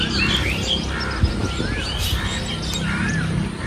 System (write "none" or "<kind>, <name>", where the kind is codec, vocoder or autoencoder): none